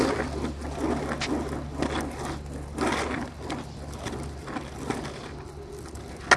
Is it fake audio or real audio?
real